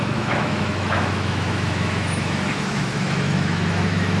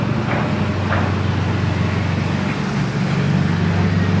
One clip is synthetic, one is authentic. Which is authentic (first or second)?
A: second